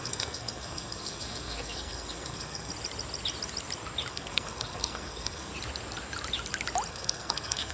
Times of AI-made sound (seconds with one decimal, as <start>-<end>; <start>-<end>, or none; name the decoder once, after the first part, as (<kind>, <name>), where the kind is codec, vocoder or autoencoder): 0.0-2.7 (codec, SNAC); 4.1-5.5; 6.9-7.7